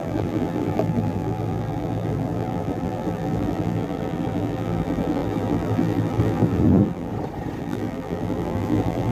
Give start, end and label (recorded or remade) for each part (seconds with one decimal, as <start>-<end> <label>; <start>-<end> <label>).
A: 0.0-7.1 remade; 7.1-7.6 recorded; 7.6-9.1 remade